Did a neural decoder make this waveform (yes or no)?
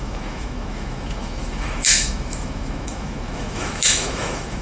yes